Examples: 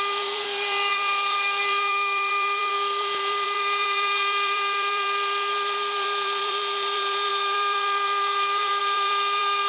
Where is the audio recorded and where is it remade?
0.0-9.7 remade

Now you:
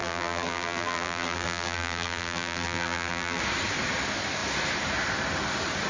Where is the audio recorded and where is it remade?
0.0-3.4 remade; 3.4-5.9 recorded

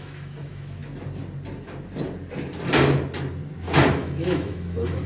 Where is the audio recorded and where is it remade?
0.0-0.8 remade; 0.8-3.9 recorded; 3.9-5.1 remade

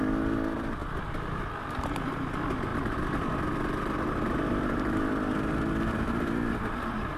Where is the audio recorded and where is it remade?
0.0-0.8 recorded; 0.8-1.4 remade; 1.4-2.7 recorded; 2.7-7.2 remade

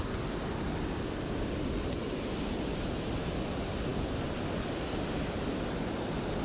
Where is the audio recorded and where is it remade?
0.0-6.4 recorded

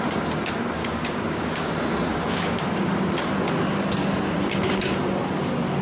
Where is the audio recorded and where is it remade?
0.0-0.8 recorded; 0.8-1.7 remade; 1.7-2.1 recorded; 2.1-3.1 remade; 3.1-5.8 recorded